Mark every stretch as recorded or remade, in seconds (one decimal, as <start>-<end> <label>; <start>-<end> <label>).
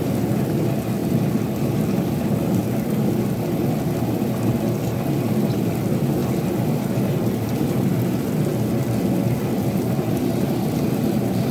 0.0-2.6 remade; 2.6-5.3 recorded; 5.3-6.2 remade; 6.2-7.0 recorded; 7.0-8.5 remade; 8.5-9.5 recorded; 9.5-11.5 remade